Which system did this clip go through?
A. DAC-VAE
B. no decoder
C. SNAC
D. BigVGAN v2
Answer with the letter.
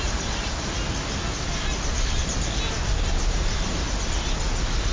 B